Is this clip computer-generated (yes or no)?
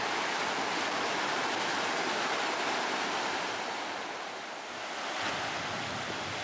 no